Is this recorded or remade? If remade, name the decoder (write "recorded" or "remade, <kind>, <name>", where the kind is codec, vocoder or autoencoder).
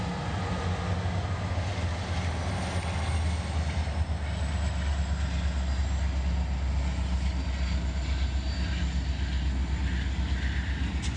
recorded